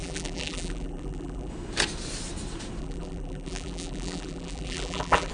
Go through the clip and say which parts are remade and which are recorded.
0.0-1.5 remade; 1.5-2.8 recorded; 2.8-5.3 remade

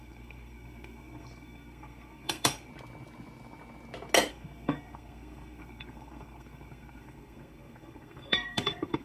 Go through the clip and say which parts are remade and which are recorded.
0.0-2.7 remade; 2.7-4.3 recorded; 4.3-9.0 remade

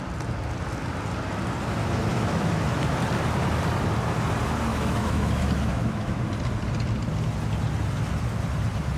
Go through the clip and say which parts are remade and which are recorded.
0.0-2.1 recorded; 2.1-3.0 remade; 3.0-4.7 recorded; 4.7-6.2 remade; 6.2-9.0 recorded

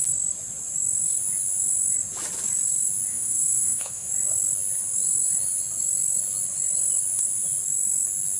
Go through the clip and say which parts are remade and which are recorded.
0.0-3.1 recorded; 3.1-4.1 remade; 4.1-8.4 recorded

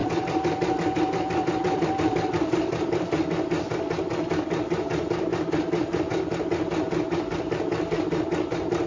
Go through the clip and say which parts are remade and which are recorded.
0.0-3.3 remade; 3.3-5.3 recorded; 5.3-6.0 remade; 6.0-8.9 recorded

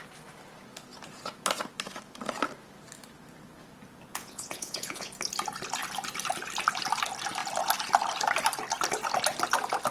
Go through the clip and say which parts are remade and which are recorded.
0.0-4.1 recorded; 4.1-5.1 remade; 5.1-9.9 recorded